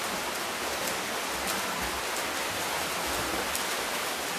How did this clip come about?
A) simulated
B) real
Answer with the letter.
B